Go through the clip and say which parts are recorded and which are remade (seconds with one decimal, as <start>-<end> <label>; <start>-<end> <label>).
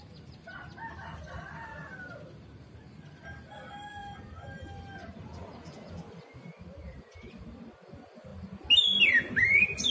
0.0-9.9 recorded